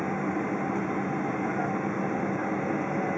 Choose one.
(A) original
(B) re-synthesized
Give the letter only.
A